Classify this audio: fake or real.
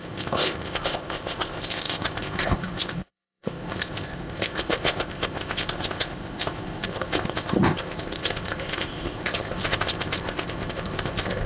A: fake